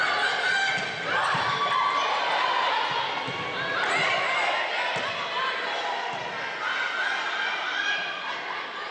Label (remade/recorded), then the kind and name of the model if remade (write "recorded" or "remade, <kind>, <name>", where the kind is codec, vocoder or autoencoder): recorded